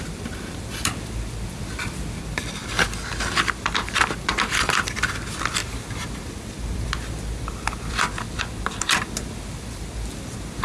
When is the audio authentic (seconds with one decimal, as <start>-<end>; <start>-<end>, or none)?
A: 2.6-3.5